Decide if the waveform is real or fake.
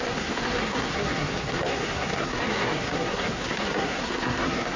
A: fake